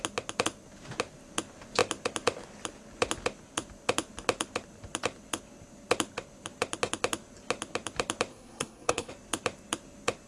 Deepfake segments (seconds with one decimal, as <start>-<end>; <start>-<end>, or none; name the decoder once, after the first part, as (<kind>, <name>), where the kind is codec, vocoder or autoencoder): 8.3-9.1 (codec, SNAC)